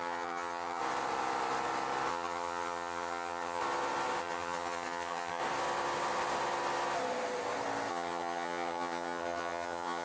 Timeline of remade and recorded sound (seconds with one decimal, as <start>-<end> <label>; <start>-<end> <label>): 0.0-0.8 remade; 0.8-2.1 recorded; 2.1-3.6 remade; 3.6-4.2 recorded; 4.2-5.4 remade; 5.4-7.9 recorded; 7.9-10.0 remade